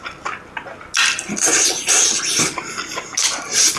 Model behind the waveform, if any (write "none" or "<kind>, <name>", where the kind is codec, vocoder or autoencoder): none